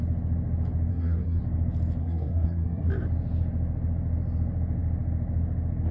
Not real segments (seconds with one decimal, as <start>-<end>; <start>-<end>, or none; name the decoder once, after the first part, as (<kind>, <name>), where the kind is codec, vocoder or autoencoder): 0.9-1.4 (codec, SNAC); 2.0-2.9